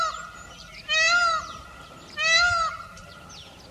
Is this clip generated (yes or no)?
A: no